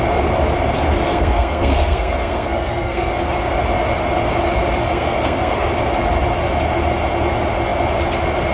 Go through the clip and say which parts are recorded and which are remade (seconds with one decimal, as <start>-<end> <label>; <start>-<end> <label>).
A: 0.0-1.1 recorded; 1.1-3.1 remade; 3.1-4.9 recorded; 4.9-5.7 remade; 5.7-8.5 recorded